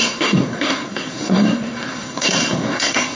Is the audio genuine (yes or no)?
no